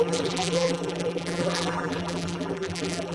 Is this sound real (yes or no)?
no